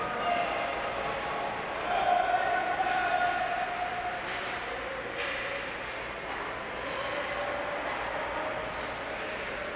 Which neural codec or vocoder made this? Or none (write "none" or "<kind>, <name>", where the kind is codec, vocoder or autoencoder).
none